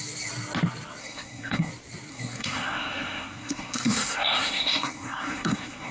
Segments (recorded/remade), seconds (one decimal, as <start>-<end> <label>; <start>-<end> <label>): 0.0-1.0 recorded; 1.0-1.7 remade; 1.7-2.1 recorded; 2.1-5.9 remade